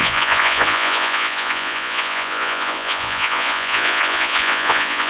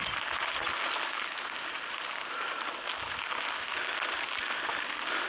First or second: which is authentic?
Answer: second